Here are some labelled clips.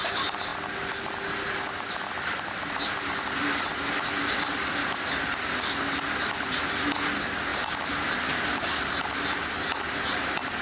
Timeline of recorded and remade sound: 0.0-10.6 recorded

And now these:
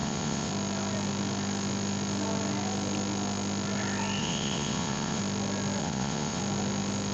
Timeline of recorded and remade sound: 0.0-0.5 remade; 0.5-4.2 recorded; 4.2-5.2 remade; 5.2-5.8 recorded; 5.8-6.4 remade; 6.4-7.1 recorded

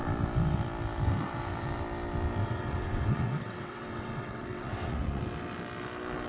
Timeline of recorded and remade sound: 0.0-2.4 recorded; 2.4-5.2 remade; 5.2-6.3 recorded

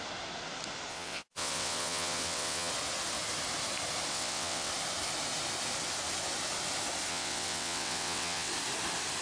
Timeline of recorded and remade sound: 0.0-0.9 recorded; 0.9-2.7 remade; 2.7-4.1 recorded; 4.1-4.7 remade; 4.7-7.1 recorded; 7.1-8.5 remade; 8.5-9.2 recorded

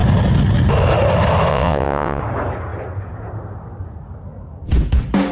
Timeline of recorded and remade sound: 0.0-1.5 recorded; 1.5-2.2 remade; 2.2-5.3 recorded

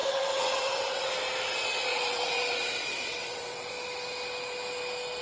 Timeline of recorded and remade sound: 0.0-1.1 remade; 1.1-1.9 recorded; 1.9-3.7 remade; 3.7-5.2 recorded

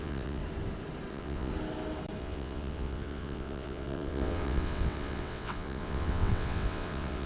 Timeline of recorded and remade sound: 0.0-0.4 remade; 0.4-1.1 recorded; 1.1-1.5 remade; 1.5-2.2 recorded; 2.2-7.3 remade